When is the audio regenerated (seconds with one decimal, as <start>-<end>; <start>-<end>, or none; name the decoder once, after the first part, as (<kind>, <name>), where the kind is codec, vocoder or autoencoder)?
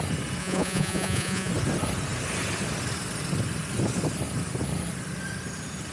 0.4-1.5 (vocoder, Vocos)